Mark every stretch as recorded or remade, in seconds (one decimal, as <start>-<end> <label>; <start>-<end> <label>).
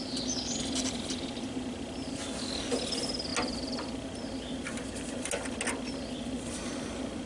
0.0-7.3 recorded